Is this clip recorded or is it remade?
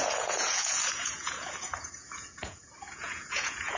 remade